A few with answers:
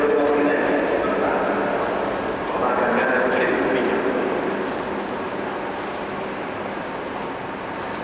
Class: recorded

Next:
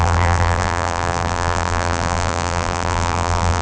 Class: remade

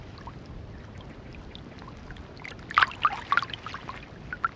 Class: recorded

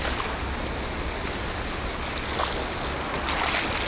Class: recorded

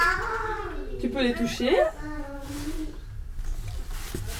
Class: recorded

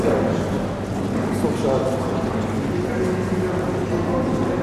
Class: recorded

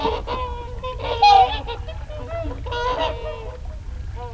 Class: recorded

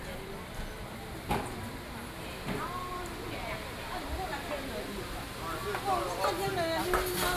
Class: recorded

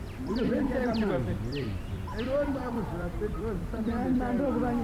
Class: remade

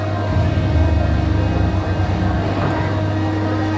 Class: remade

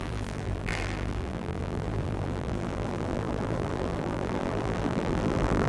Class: remade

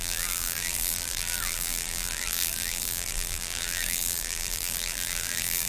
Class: remade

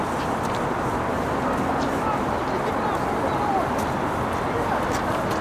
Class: recorded